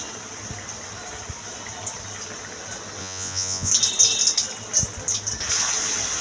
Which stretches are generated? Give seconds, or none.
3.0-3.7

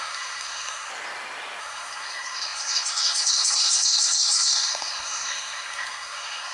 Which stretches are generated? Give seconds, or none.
0.0-0.9; 1.6-6.5

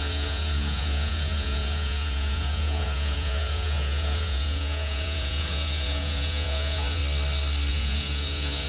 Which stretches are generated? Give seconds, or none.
0.0-7.0; 7.7-8.7